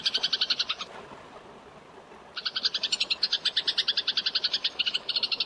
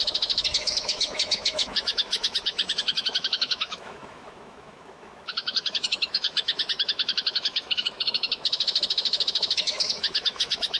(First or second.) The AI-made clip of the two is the second